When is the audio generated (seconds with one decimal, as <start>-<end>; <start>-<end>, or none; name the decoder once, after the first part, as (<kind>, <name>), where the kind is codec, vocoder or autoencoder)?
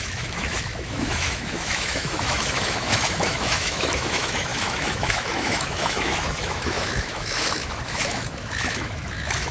0.0-9.5 (autoencoder, DAC-VAE)